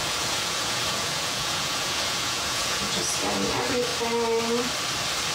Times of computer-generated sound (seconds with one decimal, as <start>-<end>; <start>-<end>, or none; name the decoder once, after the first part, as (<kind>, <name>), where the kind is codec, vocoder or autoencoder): 0.0-3.0 (vocoder, Vocos)